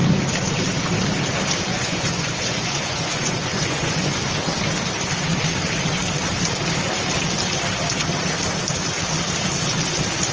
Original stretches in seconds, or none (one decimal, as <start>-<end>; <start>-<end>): 0.0-1.7; 4.3-10.3